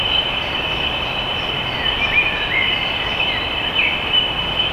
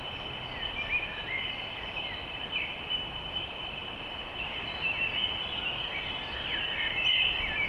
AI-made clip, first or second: first